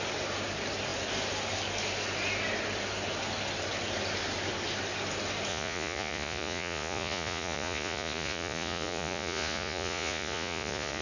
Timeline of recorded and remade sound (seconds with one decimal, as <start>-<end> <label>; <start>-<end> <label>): 0.0-5.5 recorded; 5.5-11.0 remade